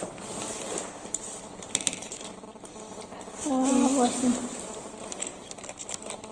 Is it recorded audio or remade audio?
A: recorded